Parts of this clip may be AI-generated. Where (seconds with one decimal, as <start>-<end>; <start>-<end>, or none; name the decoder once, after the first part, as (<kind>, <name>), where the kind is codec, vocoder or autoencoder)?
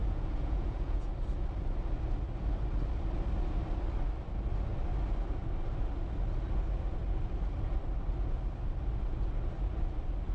0.0-1.1 (vocoder, Vocos)